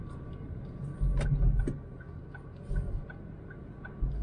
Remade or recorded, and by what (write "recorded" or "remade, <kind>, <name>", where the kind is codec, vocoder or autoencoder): recorded